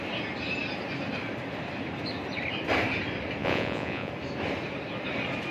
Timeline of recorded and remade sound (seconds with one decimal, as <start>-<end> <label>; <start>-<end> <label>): 0.0-3.4 recorded; 3.4-4.1 remade; 4.1-5.5 recorded